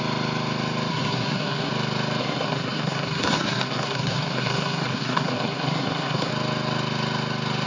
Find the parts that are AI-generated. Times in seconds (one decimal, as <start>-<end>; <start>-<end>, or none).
0.9-1.7; 2.2-6.3